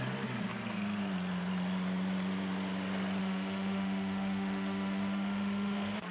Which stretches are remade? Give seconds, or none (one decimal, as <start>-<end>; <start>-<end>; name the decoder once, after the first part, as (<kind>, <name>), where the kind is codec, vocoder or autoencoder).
3.2-6.1 (autoencoder, DAC-VAE)